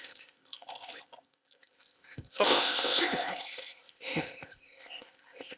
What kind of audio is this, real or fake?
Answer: fake